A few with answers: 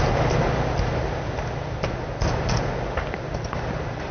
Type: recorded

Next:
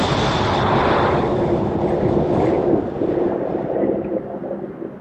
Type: recorded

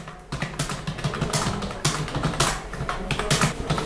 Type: recorded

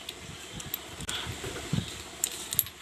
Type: recorded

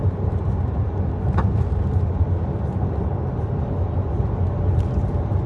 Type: recorded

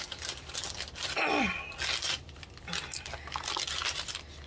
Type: recorded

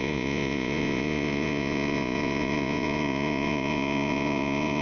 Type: remade